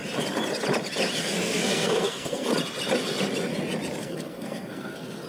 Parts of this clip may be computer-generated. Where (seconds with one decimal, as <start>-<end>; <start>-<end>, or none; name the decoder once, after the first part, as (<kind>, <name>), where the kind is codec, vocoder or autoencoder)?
1.2-2.5 (codec, SNAC); 4.0-5.3